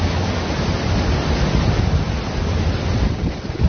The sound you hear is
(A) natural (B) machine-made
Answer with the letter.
A